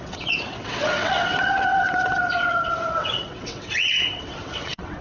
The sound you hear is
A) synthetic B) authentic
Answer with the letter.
A